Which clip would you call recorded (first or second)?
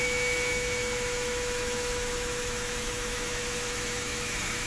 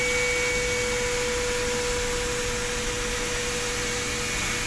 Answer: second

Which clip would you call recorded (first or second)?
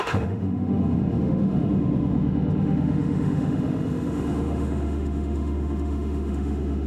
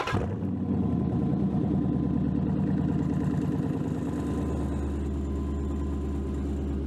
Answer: second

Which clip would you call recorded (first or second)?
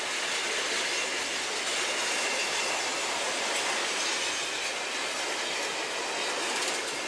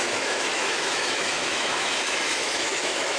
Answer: first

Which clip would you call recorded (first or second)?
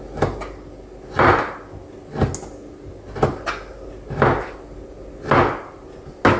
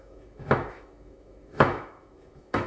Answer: first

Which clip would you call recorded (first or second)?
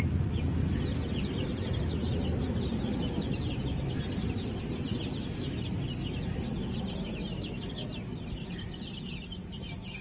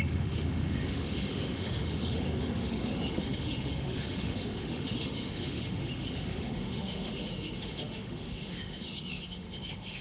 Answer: first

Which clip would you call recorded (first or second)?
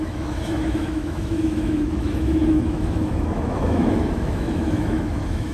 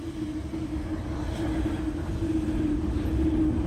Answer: second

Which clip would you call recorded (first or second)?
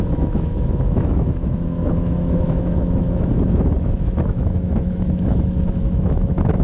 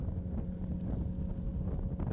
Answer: second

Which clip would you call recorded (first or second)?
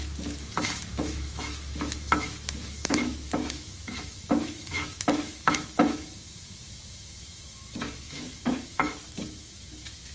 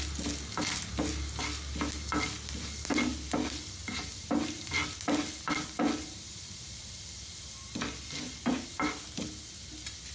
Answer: second